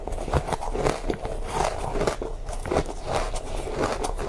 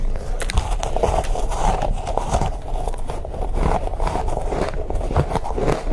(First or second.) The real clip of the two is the first